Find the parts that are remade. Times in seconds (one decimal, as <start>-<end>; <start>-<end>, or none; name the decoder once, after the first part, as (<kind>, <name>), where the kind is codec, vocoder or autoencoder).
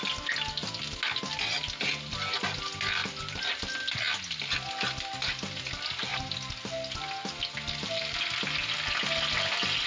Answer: none